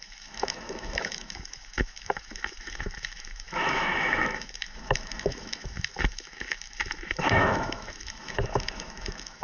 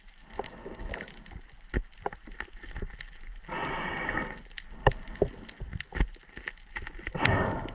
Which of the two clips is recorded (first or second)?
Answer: second